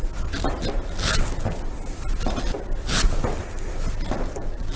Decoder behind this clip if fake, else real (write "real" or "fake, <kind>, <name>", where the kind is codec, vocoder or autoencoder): real